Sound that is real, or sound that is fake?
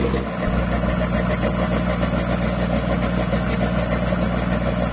real